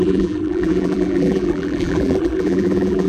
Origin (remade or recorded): remade